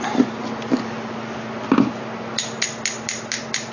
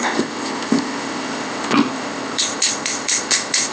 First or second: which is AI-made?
second